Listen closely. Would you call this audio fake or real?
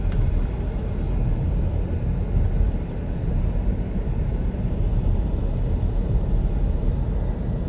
real